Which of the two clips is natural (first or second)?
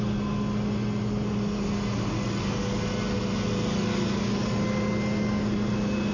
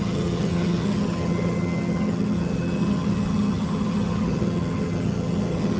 first